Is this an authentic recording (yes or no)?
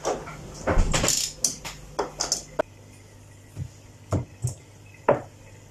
yes